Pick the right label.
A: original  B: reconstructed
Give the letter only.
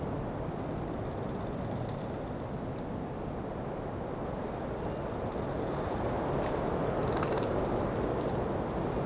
A